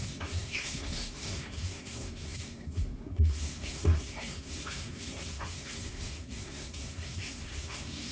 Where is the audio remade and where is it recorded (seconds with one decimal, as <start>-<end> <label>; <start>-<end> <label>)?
0.0-8.1 remade